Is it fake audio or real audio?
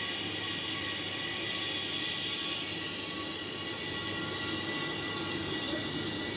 real